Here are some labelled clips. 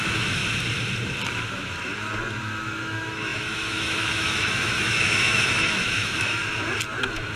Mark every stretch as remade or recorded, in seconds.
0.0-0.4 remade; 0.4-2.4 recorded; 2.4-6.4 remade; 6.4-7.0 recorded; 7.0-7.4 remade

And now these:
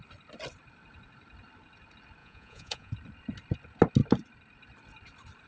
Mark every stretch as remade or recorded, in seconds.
0.0-2.2 recorded; 2.2-2.9 remade; 2.9-5.5 recorded

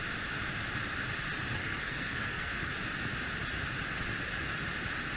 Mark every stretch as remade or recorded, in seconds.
0.0-1.6 recorded; 1.6-2.7 remade; 2.7-5.2 recorded